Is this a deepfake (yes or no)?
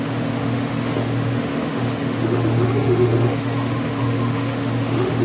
yes